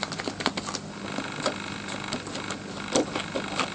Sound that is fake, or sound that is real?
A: real